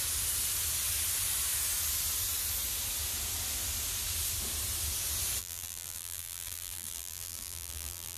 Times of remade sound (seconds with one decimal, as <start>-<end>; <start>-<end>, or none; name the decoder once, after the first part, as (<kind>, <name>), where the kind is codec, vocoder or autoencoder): 5.4-8.2 (vocoder, BigVGAN v2)